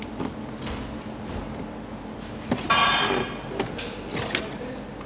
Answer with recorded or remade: recorded